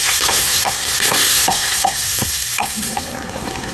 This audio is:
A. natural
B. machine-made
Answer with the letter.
B